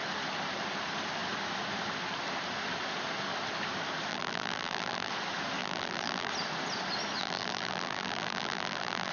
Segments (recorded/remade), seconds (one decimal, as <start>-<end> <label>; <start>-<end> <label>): 0.0-4.1 recorded; 4.1-5.1 remade; 5.1-5.6 recorded; 5.6-6.3 remade; 6.3-7.2 recorded; 7.2-9.1 remade